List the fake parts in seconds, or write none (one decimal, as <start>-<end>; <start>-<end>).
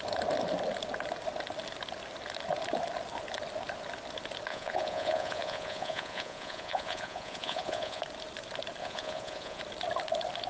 4.5-8.0; 8.8-9.6